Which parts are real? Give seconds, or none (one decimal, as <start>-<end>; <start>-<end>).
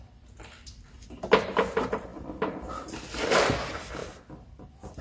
0.0-5.0